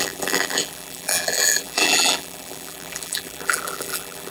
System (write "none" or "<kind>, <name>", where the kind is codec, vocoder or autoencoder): vocoder, BigVGAN v2